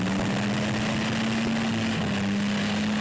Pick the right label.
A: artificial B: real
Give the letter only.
B